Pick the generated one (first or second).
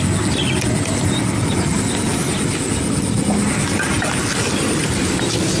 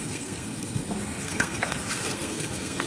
second